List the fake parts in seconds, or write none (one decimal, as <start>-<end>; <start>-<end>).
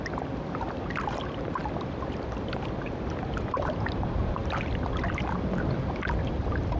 0.0-6.8